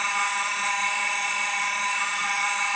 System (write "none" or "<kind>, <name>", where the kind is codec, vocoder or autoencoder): autoencoder, DAC-VAE